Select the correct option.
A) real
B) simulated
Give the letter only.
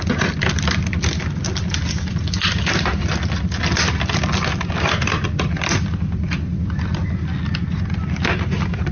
A